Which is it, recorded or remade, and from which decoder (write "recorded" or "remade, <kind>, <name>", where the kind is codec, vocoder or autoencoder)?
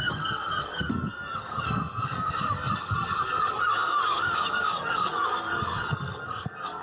remade, codec, SNAC